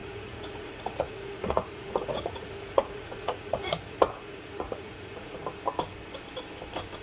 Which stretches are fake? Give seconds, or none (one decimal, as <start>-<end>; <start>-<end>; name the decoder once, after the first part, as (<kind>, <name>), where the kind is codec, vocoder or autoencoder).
0.0-5.4 (vocoder, Vocos)